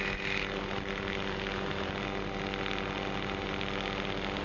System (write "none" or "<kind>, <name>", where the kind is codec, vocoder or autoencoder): none